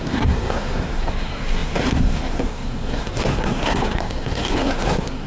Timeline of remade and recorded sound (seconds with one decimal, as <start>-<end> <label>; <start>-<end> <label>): 0.0-5.3 remade